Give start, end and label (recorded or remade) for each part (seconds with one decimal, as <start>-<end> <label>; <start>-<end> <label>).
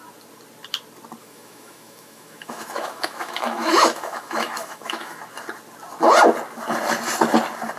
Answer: 0.0-1.2 recorded; 1.2-5.2 remade; 5.2-7.8 recorded